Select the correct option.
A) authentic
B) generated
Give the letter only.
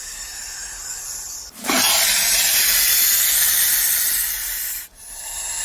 A